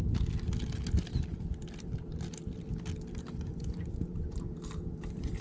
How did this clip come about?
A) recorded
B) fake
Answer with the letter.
A